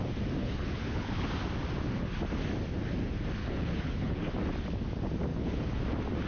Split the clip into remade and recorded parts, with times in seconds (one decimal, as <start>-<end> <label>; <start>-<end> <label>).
0.0-0.4 recorded; 0.4-1.3 remade; 1.3-3.4 recorded; 3.4-4.3 remade; 4.3-5.3 recorded; 5.3-5.8 remade; 5.8-6.3 recorded